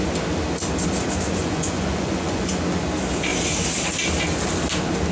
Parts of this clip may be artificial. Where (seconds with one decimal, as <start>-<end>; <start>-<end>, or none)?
1.3-2.5